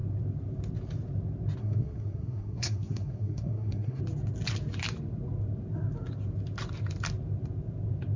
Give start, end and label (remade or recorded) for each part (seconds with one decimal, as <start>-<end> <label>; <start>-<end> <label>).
0.0-1.6 recorded; 1.6-4.0 remade; 4.0-8.2 recorded

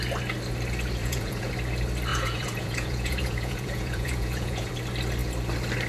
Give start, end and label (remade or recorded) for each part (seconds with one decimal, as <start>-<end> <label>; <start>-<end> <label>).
0.0-1.0 recorded; 1.0-1.5 remade; 1.5-2.1 recorded; 2.1-4.7 remade; 4.7-5.9 recorded

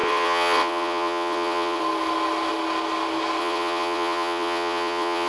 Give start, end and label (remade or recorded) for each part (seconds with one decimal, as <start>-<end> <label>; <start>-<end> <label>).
0.0-1.8 remade; 1.8-3.4 recorded; 3.4-5.3 remade

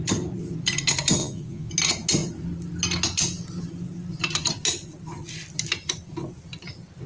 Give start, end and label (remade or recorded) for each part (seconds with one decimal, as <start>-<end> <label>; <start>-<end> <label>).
0.0-1.2 recorded; 1.2-1.7 remade; 1.7-7.1 recorded

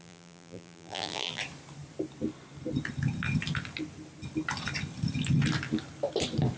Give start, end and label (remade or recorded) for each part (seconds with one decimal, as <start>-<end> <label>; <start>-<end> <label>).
0.0-1.4 remade; 1.4-6.6 recorded

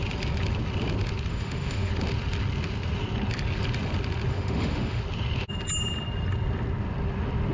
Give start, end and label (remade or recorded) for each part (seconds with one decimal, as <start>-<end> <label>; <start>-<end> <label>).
0.0-1.3 recorded; 1.3-1.9 remade; 1.9-4.3 recorded; 4.3-5.0 remade; 5.0-7.5 recorded

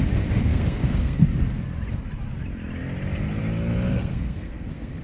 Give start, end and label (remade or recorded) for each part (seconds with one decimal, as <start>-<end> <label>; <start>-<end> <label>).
0.0-0.5 recorded; 0.5-1.2 remade; 1.2-3.9 recorded; 3.9-5.0 remade